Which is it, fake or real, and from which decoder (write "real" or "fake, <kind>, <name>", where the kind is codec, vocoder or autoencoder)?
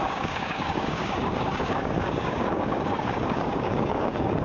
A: fake, codec, DAC